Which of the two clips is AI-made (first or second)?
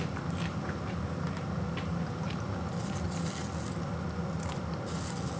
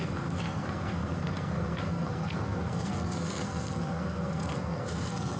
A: second